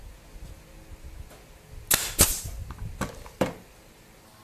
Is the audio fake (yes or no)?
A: no